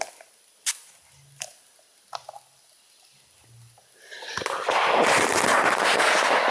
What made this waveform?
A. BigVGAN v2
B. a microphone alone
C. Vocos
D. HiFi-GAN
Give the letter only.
B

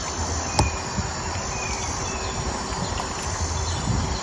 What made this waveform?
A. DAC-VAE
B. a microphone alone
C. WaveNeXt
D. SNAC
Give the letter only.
B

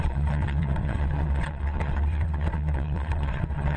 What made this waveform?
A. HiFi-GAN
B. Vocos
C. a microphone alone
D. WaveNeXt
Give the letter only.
D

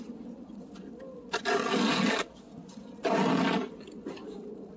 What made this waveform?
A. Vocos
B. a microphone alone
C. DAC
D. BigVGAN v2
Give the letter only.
B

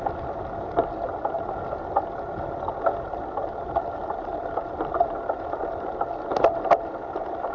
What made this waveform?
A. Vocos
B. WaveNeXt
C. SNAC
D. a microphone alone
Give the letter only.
D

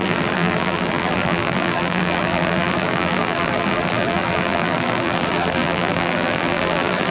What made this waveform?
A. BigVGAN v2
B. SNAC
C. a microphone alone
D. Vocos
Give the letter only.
A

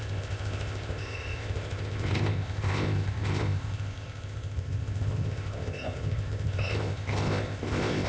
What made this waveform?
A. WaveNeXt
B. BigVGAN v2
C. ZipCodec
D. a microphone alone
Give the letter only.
C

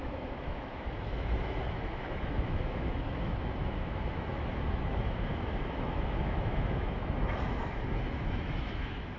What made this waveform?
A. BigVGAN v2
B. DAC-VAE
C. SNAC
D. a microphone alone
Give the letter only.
B